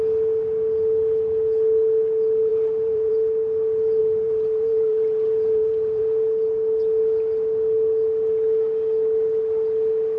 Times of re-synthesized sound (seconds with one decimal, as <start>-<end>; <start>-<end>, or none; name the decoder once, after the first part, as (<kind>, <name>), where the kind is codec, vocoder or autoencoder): 2.5-3.1 (vocoder, BigVGAN v2); 4.0-6.0